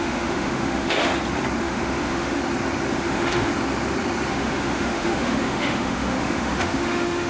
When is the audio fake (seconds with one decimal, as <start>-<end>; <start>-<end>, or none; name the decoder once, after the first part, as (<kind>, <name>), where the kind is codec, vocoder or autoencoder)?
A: 0.0-1.1 (autoencoder, DAC-VAE); 1.6-2.4; 2.9-3.5; 4.3-7.3